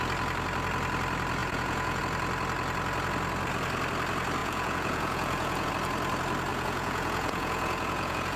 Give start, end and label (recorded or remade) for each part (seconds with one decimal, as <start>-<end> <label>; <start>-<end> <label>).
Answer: 0.0-1.4 recorded; 1.4-2.0 remade; 2.0-4.4 recorded; 4.4-5.7 remade; 5.7-6.5 recorded; 6.5-8.4 remade